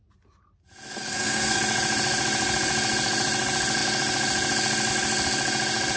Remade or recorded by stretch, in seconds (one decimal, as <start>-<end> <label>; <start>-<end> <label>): 0.0-0.9 recorded; 0.9-1.6 remade; 1.6-6.0 recorded